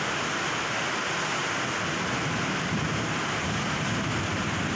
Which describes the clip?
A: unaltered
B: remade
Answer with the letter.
A